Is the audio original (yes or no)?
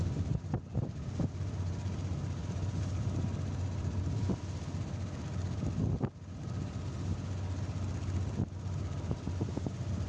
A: yes